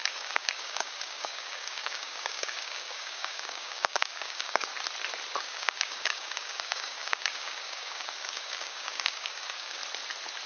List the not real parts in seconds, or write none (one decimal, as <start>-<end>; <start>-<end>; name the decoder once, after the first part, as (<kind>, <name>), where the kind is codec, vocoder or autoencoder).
0.0-4.7 (codec, DAC); 5.4-9.8